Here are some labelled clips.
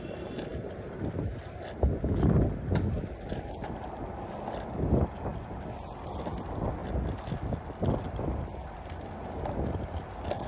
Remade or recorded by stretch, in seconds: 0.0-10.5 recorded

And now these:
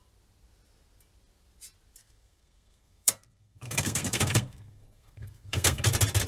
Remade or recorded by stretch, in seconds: 0.0-2.0 recorded; 2.0-5.8 remade; 5.8-6.3 recorded

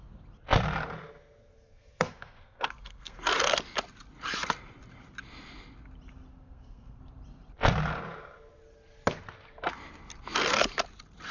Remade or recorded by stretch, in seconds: 0.0-1.4 recorded; 1.4-3.2 remade; 3.2-6.3 recorded; 6.3-7.0 remade; 7.0-11.3 recorded

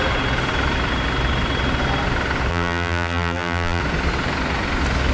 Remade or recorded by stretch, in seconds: 0.0-2.5 recorded; 2.5-3.8 remade; 3.8-5.1 recorded

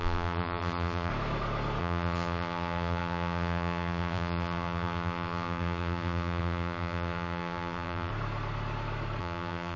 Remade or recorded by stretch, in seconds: 0.0-1.1 remade; 1.1-1.8 recorded; 1.8-8.1 remade; 8.1-9.2 recorded; 9.2-9.8 remade